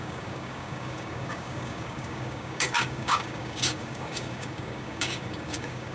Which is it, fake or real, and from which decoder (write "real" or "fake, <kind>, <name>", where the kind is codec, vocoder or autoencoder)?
fake, codec, DAC